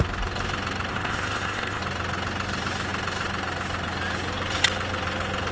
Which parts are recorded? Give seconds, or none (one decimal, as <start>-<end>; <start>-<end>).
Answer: 0.0-0.9; 1.8-5.5